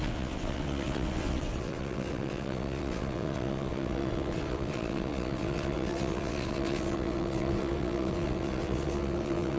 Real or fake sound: fake